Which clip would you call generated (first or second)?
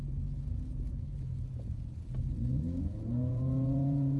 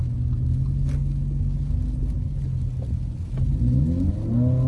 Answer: first